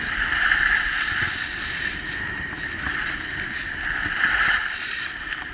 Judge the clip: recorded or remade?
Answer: recorded